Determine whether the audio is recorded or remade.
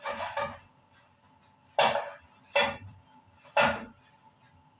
recorded